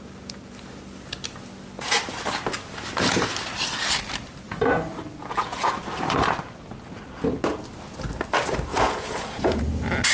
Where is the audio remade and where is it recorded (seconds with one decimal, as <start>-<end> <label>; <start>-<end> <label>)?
0.0-5.2 recorded; 5.2-5.7 remade; 5.7-8.7 recorded; 8.7-9.6 remade; 9.6-10.1 recorded